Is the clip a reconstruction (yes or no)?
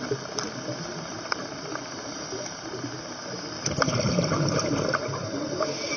no